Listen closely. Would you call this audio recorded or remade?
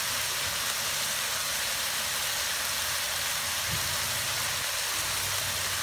recorded